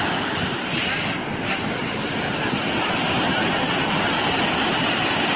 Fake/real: fake